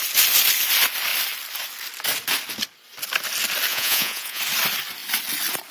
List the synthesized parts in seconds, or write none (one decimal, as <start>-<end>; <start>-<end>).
3.7-4.4